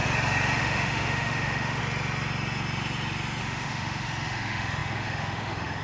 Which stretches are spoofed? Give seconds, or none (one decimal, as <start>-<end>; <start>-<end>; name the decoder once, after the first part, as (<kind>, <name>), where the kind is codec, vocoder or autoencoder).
0.6-1.8 (autoencoder, DAC-VAE); 3.4-5.8